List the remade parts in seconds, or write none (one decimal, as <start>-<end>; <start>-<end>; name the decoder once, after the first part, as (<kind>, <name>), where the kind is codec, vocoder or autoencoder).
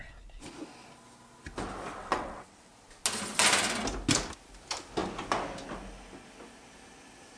2.0-2.7 (vocoder, WaveNeXt)